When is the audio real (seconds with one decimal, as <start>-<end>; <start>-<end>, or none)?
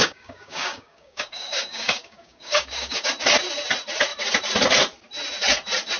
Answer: 3.1-6.0